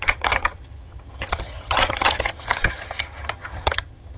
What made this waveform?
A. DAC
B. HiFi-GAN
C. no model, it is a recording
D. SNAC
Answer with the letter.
B